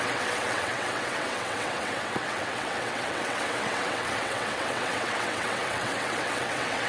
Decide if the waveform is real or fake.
fake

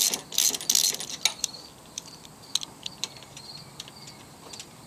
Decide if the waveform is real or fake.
real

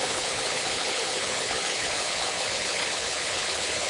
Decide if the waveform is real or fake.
fake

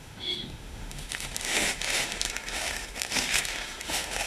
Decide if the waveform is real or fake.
fake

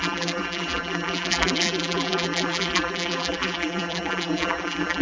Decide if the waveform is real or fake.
fake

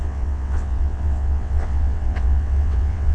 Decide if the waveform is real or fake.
fake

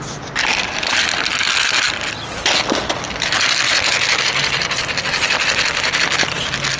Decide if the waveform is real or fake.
real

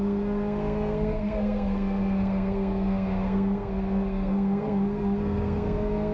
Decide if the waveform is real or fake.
fake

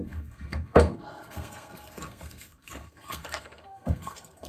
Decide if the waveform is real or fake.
fake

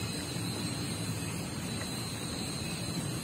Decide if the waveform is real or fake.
real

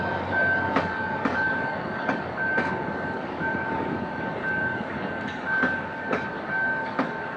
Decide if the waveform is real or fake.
fake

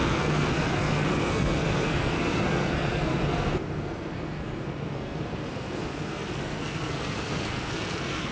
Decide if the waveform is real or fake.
fake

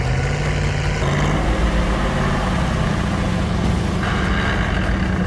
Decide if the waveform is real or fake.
real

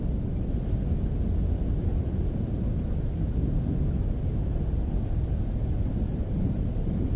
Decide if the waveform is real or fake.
real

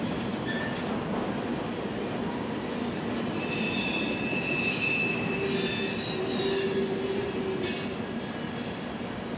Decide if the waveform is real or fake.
real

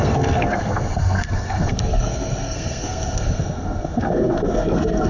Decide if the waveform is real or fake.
fake